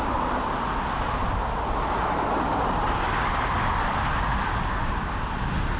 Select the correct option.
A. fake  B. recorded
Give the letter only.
B